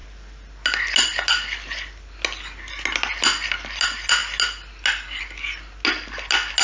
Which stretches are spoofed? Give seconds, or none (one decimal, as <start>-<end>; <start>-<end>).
none